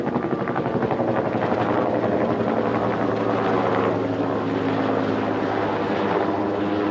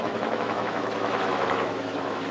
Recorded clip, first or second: first